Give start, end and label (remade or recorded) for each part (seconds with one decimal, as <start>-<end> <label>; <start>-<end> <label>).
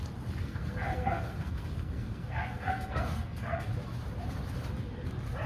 0.0-0.4 recorded; 0.4-3.7 remade; 3.7-5.5 recorded